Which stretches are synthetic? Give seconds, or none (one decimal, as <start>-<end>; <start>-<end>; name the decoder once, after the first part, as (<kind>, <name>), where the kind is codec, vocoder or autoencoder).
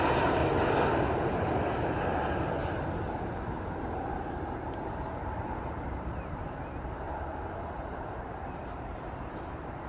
0.0-0.4 (vocoder, BigVGAN v2); 3.8-9.9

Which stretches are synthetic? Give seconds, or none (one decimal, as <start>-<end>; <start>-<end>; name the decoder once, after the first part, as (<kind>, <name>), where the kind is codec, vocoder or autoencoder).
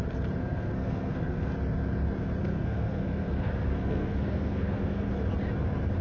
0.4-1.5 (codec, SNAC); 2.4-5.1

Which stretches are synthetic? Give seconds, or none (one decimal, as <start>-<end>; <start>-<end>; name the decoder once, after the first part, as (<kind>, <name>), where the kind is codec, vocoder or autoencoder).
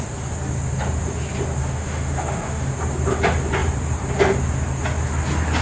1.6-2.7 (autoencoder, DAC-VAE)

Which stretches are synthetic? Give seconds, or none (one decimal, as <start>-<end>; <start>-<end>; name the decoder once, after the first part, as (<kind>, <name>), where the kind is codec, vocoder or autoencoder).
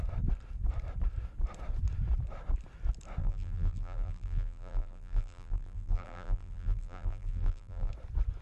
3.2-7.9 (vocoder, BigVGAN v2)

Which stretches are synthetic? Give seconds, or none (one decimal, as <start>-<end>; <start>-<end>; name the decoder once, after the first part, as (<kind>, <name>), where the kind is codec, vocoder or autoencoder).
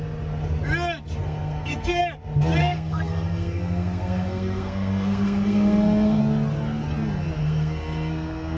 1.2-2.0 (codec, SNAC); 2.6-6.2; 7.4-8.6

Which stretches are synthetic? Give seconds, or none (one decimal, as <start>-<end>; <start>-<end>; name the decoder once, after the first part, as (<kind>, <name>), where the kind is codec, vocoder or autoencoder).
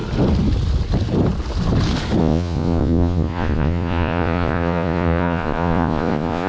2.2-6.5 (vocoder, Vocos)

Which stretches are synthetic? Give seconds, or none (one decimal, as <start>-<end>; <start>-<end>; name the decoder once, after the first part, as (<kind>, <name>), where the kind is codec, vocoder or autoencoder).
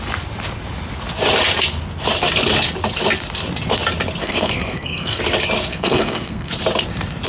4.2-5.2 (codec, SNAC); 5.7-6.5